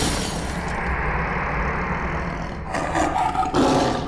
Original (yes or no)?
yes